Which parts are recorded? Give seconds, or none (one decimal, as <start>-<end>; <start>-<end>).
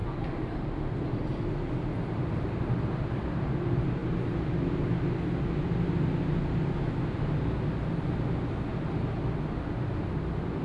0.0-10.6